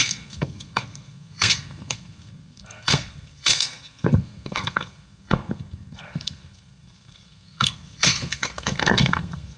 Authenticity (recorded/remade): remade